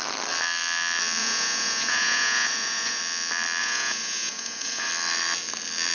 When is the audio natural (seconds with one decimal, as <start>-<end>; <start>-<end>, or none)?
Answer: 0.0-1.2; 3.0-3.6; 4.9-5.9